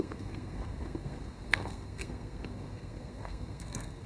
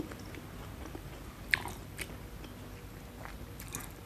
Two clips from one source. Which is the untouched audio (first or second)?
second